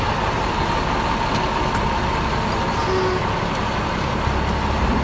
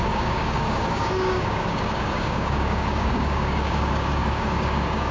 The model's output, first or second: second